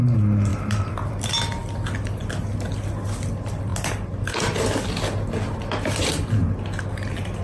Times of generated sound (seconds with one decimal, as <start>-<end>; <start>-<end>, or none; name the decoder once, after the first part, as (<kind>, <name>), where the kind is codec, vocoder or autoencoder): none